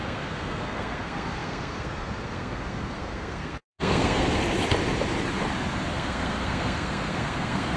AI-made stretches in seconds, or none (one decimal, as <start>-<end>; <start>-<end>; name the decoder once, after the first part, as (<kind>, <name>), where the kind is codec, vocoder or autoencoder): 0.0-4.4 (codec, SNAC); 5.9-7.8

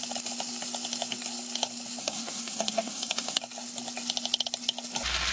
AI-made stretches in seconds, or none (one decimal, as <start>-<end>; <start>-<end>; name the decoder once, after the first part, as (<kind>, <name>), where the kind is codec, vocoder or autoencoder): 2.0-3.4 (codec, SNAC)

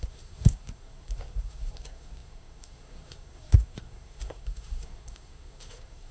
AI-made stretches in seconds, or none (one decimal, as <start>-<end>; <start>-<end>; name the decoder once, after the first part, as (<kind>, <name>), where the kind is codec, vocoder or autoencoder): 0.0-6.1 (codec, SNAC)

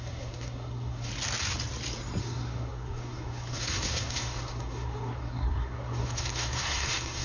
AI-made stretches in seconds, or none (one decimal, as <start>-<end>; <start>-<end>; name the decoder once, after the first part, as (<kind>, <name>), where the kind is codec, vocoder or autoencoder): 0.0-1.1 (codec, SNAC); 2.2-7.2

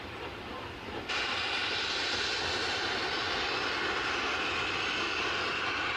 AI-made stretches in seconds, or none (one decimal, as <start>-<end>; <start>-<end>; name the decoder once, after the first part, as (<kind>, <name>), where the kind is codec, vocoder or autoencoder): none

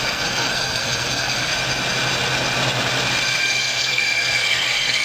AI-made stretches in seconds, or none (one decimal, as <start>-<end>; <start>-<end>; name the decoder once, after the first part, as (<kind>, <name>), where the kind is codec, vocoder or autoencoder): 0.0-1.5 (codec, SNAC); 3.4-5.0

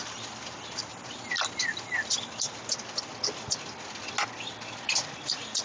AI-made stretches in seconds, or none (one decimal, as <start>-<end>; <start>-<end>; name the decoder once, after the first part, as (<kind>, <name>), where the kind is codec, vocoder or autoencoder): none

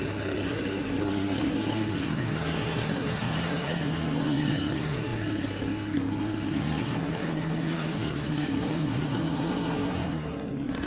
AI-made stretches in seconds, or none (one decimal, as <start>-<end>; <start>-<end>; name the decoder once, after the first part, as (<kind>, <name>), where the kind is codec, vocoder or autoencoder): 0.0-10.9 (codec, SNAC)